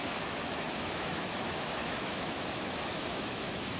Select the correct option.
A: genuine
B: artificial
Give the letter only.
B